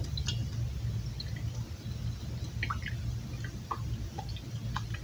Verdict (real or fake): real